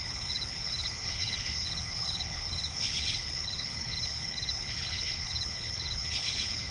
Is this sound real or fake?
fake